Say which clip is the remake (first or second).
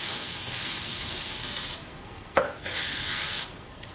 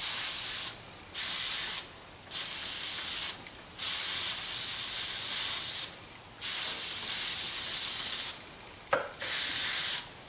first